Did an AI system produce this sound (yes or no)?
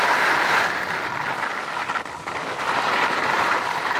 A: no